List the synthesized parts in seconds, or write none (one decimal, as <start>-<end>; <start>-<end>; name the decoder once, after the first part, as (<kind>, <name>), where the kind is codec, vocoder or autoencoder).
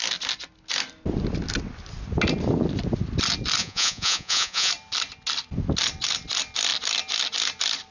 3.6-4.7 (vocoder, Vocos)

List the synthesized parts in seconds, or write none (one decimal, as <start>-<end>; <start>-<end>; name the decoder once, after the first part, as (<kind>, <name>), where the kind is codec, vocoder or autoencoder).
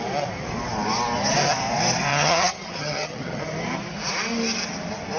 2.1-3.4 (vocoder, HiFi-GAN)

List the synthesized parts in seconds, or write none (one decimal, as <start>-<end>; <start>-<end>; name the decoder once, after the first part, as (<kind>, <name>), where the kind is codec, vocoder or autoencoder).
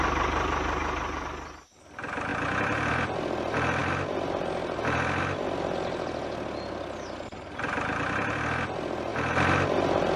none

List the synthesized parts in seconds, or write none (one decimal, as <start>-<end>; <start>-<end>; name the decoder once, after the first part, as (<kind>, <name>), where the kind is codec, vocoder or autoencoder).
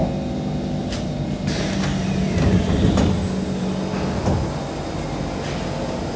0.8-1.3 (vocoder, BigVGAN v2)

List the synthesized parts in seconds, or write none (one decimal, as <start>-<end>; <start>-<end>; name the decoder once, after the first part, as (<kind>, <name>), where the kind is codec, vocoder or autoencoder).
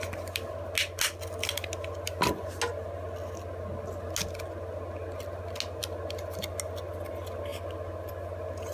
none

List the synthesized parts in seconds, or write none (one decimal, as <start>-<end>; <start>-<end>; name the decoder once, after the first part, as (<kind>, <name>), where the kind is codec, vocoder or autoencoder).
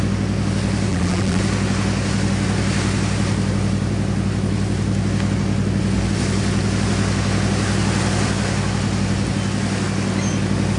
0.9-1.4 (vocoder, BigVGAN v2)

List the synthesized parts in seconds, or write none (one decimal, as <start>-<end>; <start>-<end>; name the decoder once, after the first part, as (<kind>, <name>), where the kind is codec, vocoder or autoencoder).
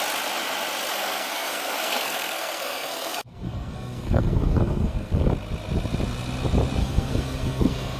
0.9-5.3 (codec, SNAC); 6.8-8.0